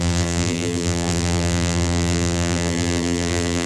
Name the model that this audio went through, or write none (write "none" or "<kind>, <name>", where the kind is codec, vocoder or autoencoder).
vocoder, BigVGAN v2